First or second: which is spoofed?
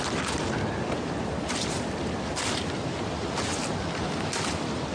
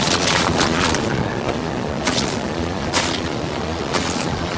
second